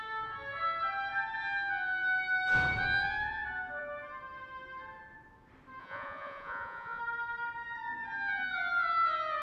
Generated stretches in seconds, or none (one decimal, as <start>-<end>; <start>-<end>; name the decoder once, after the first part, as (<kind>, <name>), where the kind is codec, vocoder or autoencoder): 5.8-7.0 (vocoder, Vocos)